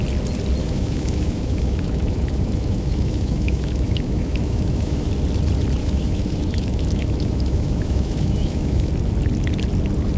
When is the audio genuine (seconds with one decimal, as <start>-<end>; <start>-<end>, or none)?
0.0-0.6; 5.1-5.8; 8.9-10.2